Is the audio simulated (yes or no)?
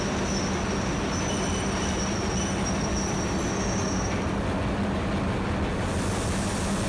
no